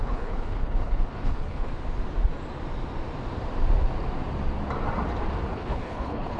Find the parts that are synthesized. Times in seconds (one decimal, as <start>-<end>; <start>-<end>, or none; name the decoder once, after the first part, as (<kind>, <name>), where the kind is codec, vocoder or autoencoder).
0.0-1.7 (codec, HILCodec); 5.5-6.4